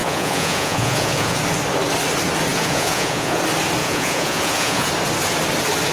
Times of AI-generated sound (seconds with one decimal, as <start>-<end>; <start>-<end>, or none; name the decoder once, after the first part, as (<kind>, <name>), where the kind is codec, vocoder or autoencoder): 0.0-1.4 (vocoder, Vocos); 2.5-3.4; 3.8-4.9

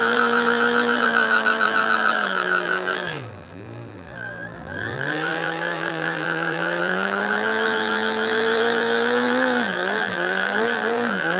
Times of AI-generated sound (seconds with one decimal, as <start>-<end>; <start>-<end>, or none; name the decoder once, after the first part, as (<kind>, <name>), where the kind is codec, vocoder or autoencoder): 0.0-11.4 (vocoder, BigVGAN v2)

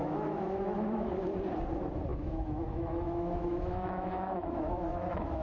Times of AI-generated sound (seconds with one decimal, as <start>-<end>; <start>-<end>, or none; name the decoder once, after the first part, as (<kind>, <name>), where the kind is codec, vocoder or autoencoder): 0.0-1.1 (autoencoder, DAC-VAE); 2.1-5.4

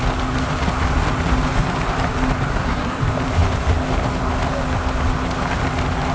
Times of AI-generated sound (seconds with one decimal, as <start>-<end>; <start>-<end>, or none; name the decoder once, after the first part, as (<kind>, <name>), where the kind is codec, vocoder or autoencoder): 2.5-3.0 (codec, SNAC)

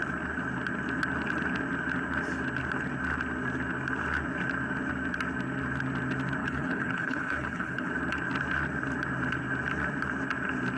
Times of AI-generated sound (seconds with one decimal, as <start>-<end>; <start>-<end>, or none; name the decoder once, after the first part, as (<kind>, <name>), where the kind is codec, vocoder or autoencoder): 6.4-7.9 (codec, HILCodec)

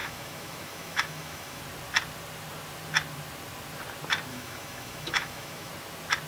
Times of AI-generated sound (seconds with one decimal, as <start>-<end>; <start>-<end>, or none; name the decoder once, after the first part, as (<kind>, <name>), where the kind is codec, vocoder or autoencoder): 0.0-1.6 (autoencoder, DAC-VAE); 4.3-5.7

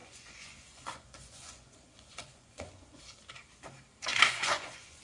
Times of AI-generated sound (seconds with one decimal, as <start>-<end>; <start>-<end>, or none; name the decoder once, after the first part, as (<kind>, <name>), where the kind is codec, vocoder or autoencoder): 0.0-3.0 (vocoder, Vocos); 4.1-5.0